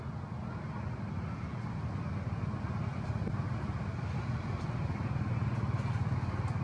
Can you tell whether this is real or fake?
real